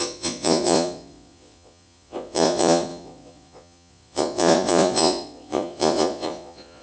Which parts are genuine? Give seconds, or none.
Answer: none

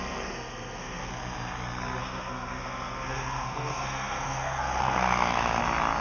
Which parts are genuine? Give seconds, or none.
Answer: 1.1-2.0; 5.6-6.0

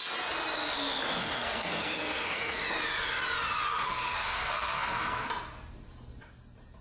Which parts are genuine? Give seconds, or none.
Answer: 0.0-1.2; 2.6-3.7; 5.3-6.8

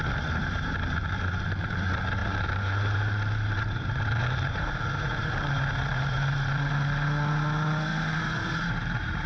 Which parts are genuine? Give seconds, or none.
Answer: 0.0-0.4; 1.7-2.2; 6.7-7.9

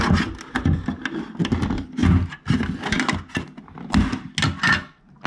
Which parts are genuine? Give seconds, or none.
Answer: 0.0-5.3

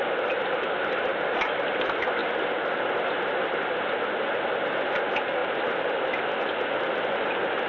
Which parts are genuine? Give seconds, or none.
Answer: 0.0-7.7

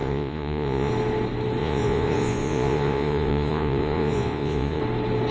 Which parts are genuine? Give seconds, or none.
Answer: 0.9-1.6; 4.8-5.3